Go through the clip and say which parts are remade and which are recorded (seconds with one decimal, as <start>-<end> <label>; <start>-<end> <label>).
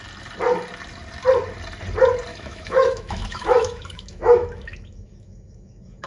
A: 0.0-2.3 recorded; 2.3-6.1 remade